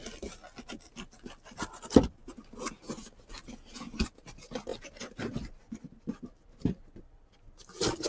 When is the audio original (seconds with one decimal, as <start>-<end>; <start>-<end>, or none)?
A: 0.0-0.7; 2.2-4.0